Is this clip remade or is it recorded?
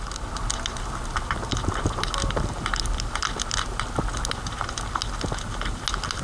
recorded